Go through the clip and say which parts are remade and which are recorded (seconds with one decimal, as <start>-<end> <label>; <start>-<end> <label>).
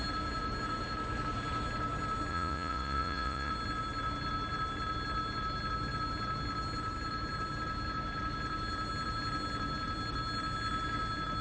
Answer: 0.0-2.3 recorded; 2.3-3.5 remade; 3.5-11.4 recorded